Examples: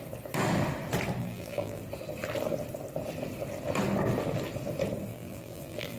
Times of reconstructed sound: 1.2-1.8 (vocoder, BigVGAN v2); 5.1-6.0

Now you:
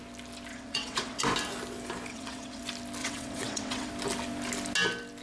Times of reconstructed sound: 0.5-1.2 (vocoder, WaveNeXt); 2.1-2.6; 3.0-3.9

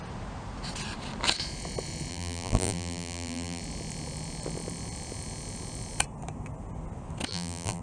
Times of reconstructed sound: 2.1-3.6 (vocoder, BigVGAN v2); 7.3-7.8

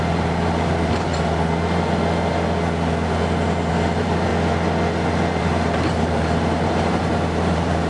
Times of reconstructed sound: 0.0-1.1 (vocoder, BigVGAN v2); 3.7-4.3; 5.4-7.9